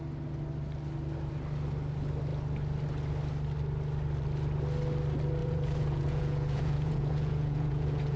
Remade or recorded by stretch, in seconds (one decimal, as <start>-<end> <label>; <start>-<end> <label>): 0.0-5.4 recorded; 5.4-8.2 remade